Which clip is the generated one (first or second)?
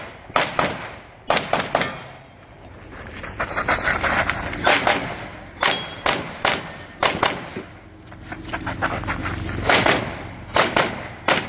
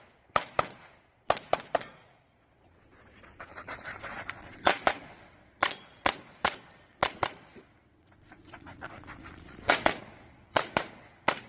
second